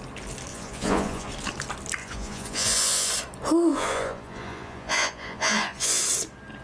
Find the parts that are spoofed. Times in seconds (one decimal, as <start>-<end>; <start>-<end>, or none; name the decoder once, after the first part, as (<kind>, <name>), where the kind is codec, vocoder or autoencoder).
0.5-1.3 (vocoder, Vocos); 2.0-3.1; 3.7-6.0